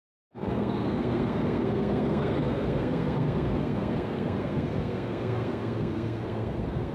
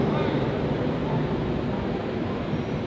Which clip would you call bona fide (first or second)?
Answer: second